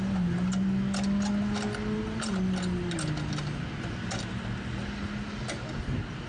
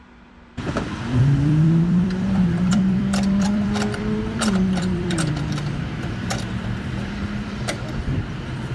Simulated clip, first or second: second